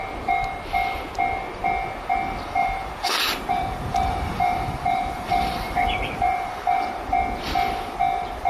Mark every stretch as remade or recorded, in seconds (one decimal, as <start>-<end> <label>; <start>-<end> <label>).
0.0-2.6 recorded; 2.6-7.2 remade; 7.2-8.5 recorded